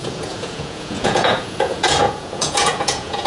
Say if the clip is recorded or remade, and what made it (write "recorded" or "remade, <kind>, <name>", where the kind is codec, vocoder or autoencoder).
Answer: remade, vocoder, Vocos